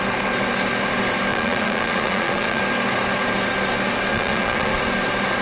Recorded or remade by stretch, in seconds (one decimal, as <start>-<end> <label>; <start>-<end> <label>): 0.0-1.3 recorded; 1.3-2.6 remade; 2.6-4.1 recorded; 4.1-4.7 remade; 4.7-5.4 recorded

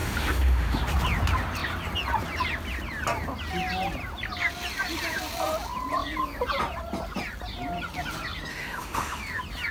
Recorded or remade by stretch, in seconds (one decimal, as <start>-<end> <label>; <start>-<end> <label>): 0.0-0.8 remade; 0.8-8.5 recorded; 8.5-9.2 remade; 9.2-9.7 recorded

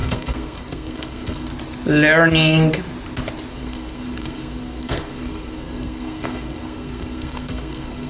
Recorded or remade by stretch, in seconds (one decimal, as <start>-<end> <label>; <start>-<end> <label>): 0.0-1.5 remade; 1.5-3.5 recorded; 3.5-8.1 remade